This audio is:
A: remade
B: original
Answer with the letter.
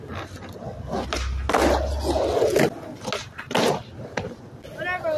B